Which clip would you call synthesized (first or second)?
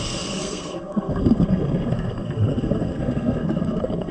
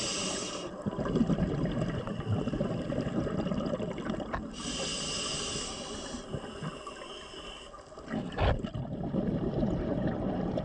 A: first